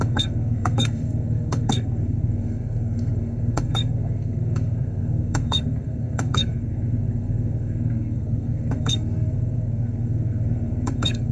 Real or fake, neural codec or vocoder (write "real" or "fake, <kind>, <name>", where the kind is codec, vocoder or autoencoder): fake, codec, SNAC